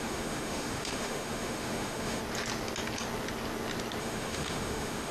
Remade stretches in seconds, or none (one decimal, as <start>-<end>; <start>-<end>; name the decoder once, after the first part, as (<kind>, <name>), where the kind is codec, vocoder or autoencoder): 0.0-2.2 (autoencoder, DAC-VAE); 4.0-5.1